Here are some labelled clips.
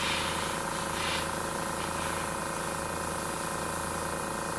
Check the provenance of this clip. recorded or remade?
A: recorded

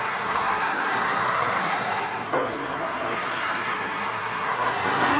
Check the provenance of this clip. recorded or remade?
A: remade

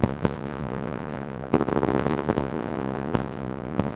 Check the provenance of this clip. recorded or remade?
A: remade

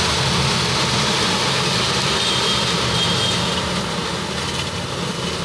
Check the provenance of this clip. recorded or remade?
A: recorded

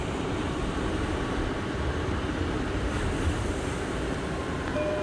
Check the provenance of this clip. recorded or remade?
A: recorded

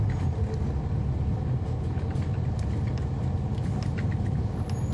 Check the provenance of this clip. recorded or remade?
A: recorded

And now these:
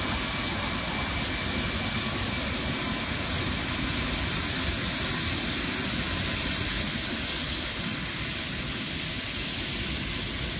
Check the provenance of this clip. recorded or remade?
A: recorded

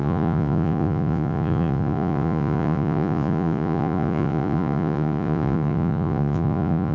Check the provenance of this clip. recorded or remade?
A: remade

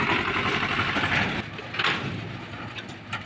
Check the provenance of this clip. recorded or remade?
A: recorded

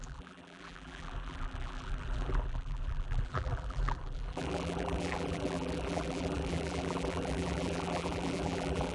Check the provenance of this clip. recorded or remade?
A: remade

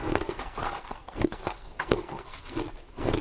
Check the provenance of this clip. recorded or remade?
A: remade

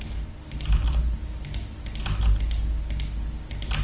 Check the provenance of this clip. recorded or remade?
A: recorded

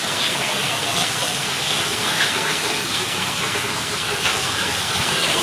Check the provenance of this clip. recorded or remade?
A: remade